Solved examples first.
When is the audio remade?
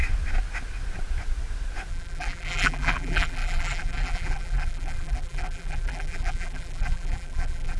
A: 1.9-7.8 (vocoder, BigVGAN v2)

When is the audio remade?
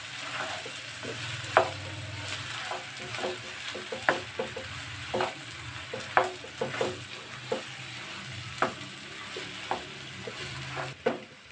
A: none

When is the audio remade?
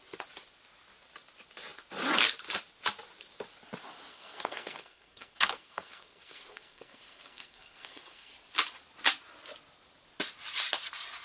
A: 4.1-8.3 (codec, SNAC)